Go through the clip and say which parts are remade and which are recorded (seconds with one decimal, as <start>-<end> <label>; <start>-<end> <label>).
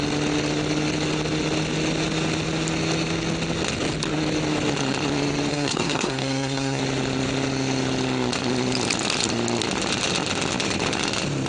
0.0-5.5 recorded; 5.5-6.8 remade; 6.8-11.5 recorded